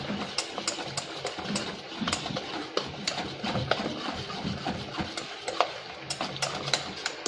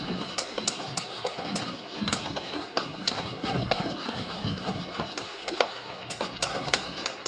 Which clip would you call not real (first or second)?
second